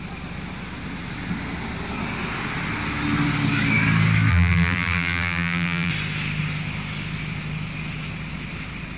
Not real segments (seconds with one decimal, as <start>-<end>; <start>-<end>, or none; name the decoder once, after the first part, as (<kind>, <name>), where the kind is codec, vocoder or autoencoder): 4.3-5.9 (vocoder, BigVGAN v2)